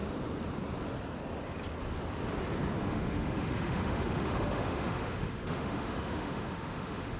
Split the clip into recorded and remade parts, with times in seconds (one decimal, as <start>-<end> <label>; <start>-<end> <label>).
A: 0.0-2.8 recorded; 2.8-7.2 remade